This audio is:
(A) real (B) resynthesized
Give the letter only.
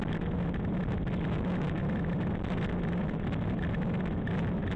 A